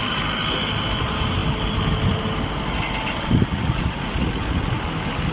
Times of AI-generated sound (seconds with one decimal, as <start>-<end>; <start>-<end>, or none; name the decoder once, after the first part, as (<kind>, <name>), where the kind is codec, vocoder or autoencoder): 3.4-4.3 (vocoder, Vocos)